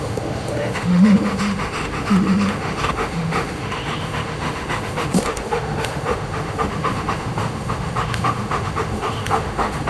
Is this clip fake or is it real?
fake